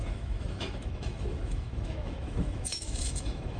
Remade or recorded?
remade